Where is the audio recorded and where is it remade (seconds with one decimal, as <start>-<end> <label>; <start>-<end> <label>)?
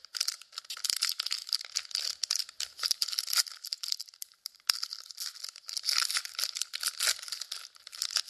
0.0-8.3 recorded